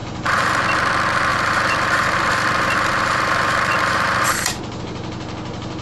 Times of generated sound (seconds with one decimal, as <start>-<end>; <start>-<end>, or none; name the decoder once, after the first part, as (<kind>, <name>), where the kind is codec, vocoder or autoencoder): 0.0-0.6 (vocoder, BigVGAN v2); 1.3-4.8